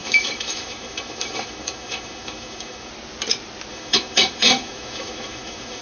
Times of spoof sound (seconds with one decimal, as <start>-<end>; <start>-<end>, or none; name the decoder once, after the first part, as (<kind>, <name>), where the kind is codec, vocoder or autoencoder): 0.0-2.9 (autoencoder, DAC-VAE); 3.7-5.8